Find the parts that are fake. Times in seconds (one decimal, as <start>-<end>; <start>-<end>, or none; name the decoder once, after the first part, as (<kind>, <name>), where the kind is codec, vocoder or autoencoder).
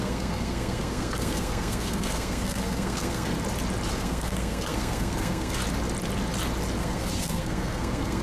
0.0-3.3 (codec, SNAC); 3.9-5.6; 6.8-8.2